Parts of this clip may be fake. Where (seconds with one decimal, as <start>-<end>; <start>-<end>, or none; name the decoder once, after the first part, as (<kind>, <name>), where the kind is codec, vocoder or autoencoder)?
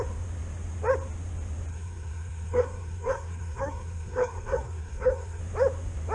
1.7-5.4 (codec, SNAC)